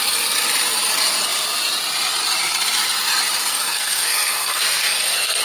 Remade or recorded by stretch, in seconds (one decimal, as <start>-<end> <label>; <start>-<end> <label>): 0.0-3.5 recorded; 3.5-5.4 remade